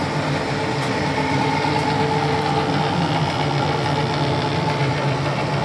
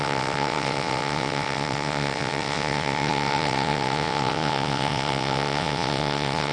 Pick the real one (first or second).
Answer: first